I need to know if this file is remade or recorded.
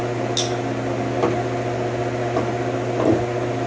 recorded